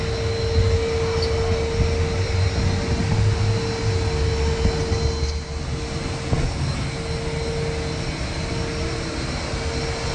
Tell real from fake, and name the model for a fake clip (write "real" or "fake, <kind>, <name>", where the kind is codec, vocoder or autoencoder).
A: real